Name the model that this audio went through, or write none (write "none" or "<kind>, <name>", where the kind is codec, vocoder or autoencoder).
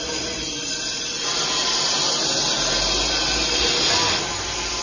none